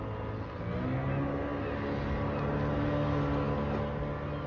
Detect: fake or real real